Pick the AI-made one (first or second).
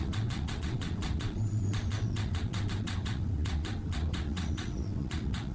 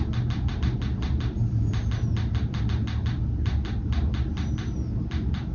first